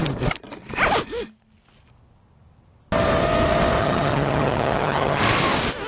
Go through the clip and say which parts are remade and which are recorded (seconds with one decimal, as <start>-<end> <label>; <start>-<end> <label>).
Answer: 0.0-3.8 recorded; 3.8-5.2 remade; 5.2-5.9 recorded